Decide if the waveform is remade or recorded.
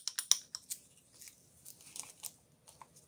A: recorded